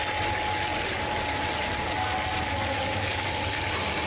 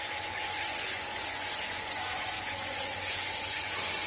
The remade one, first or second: second